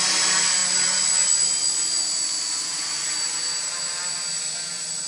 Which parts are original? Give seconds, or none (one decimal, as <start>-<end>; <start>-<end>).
0.0-5.1